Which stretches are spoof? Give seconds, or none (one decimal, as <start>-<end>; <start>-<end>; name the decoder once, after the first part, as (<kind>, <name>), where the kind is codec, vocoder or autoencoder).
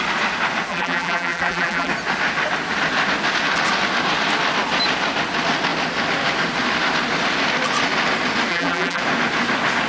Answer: 0.7-1.9 (vocoder, BigVGAN v2); 8.5-9.0